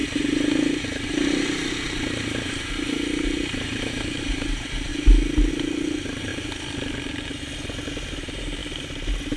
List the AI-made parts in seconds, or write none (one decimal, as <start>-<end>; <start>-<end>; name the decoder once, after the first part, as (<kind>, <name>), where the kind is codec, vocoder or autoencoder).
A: 0.0-4.9 (vocoder, BigVGAN v2); 5.5-6.3; 8.1-9.4